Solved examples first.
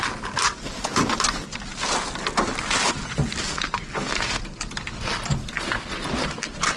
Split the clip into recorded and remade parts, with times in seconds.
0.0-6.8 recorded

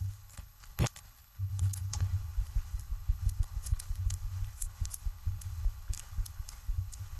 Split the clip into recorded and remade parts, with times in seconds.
0.0-7.2 remade

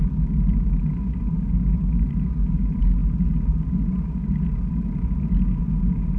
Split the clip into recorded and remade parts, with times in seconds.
0.0-6.2 recorded